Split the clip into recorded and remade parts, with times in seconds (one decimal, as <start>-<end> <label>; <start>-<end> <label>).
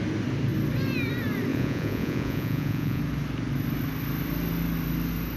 0.0-1.5 recorded; 1.5-3.0 remade; 3.0-5.4 recorded